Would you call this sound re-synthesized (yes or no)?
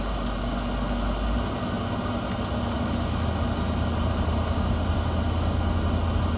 no